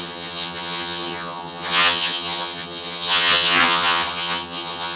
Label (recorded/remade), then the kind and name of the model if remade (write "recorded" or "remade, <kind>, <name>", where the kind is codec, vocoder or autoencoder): remade, vocoder, HiFi-GAN